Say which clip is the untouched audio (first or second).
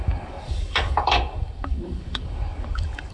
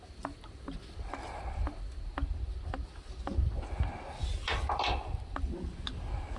second